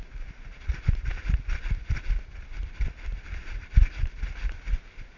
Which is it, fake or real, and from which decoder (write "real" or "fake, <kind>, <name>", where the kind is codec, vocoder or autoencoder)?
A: real